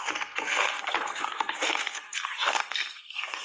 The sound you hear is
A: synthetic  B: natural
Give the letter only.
A